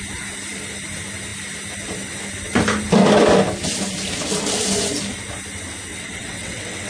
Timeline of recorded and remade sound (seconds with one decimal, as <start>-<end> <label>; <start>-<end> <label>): 0.0-5.9 recorded; 5.9-6.9 remade